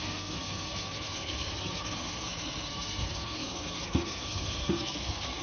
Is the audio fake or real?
fake